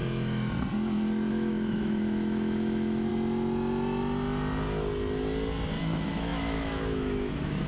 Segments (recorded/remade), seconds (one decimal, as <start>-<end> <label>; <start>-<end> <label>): 0.0-1.3 recorded; 1.3-3.1 remade; 3.1-5.8 recorded; 5.8-7.7 remade